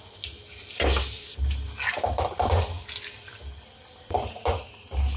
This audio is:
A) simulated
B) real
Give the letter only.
B